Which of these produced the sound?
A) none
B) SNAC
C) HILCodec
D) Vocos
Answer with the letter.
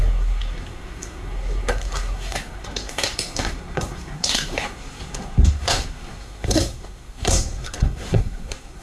B